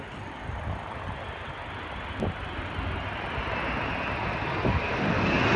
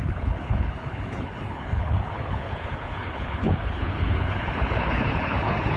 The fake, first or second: second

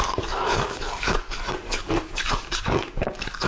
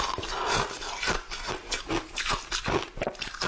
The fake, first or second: first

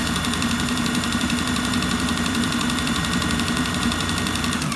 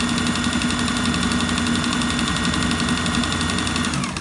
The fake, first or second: first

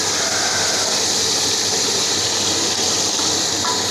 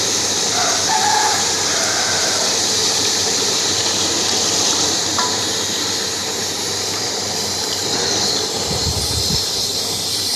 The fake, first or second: second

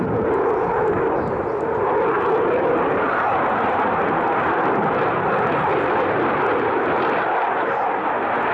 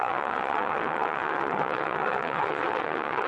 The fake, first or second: second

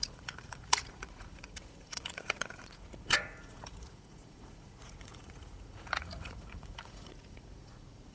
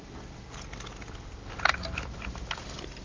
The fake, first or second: first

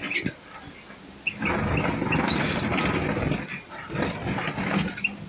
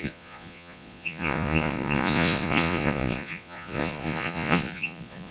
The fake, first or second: second